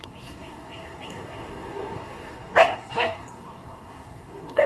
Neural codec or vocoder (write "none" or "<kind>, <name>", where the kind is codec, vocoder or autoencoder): codec, SNAC